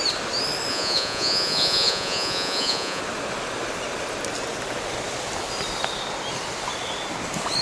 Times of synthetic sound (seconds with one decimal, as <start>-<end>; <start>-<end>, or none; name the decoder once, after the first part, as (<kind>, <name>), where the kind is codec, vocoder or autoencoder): 0.7-3.0 (vocoder, Vocos)